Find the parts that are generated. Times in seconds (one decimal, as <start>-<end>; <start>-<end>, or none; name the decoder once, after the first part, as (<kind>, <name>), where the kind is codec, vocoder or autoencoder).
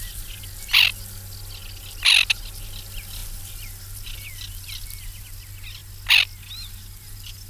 none